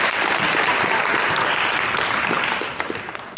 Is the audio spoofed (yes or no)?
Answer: yes